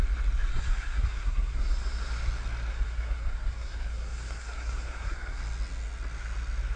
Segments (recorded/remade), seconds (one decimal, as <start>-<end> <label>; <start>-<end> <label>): 0.0-0.5 recorded; 0.5-1.6 remade; 1.6-2.7 recorded; 2.7-5.4 remade; 5.4-6.8 recorded